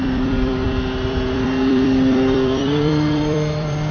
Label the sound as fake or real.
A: fake